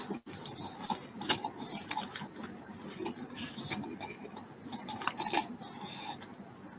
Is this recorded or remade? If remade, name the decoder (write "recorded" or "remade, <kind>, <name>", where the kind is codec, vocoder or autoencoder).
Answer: recorded